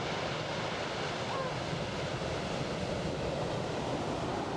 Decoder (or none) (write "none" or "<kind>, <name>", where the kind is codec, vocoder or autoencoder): none